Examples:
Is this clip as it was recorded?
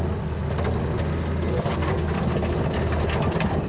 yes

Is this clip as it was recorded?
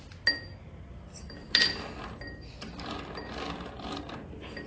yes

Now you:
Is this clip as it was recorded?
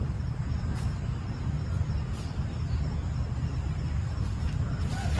yes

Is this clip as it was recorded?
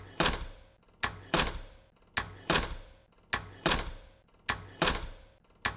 yes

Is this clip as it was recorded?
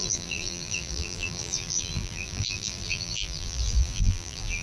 no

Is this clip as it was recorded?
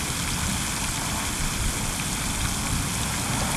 yes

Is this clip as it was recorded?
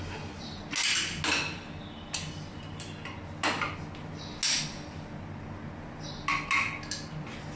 yes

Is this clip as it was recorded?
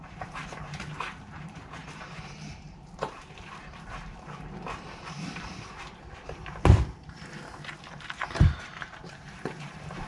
no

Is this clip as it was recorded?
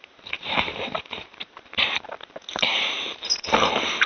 no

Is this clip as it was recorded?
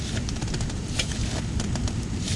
yes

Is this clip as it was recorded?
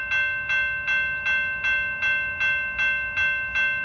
yes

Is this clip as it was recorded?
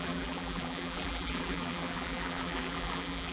no